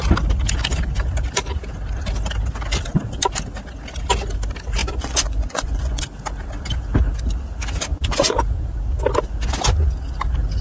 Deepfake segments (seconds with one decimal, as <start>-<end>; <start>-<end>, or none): 4.8-6.0; 7.9-8.4